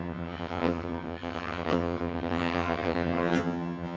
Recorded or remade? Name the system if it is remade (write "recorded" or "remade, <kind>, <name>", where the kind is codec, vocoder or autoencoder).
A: remade, vocoder, HiFi-GAN